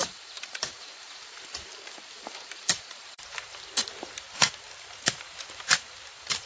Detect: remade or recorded remade